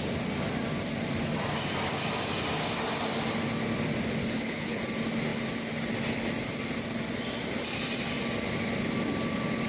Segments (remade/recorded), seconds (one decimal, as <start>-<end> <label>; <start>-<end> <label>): 0.0-4.2 recorded; 4.2-4.8 remade; 4.8-9.7 recorded